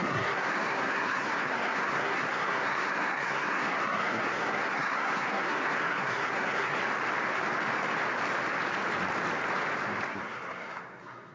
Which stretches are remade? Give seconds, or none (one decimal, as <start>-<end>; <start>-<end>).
0.0-6.8; 10.1-11.3